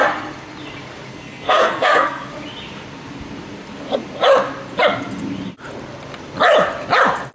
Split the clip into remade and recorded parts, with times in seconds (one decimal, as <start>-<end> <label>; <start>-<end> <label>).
0.0-1.1 recorded; 1.1-2.3 remade; 2.3-7.3 recorded